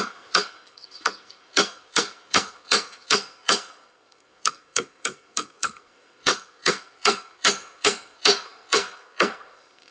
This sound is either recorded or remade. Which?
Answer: remade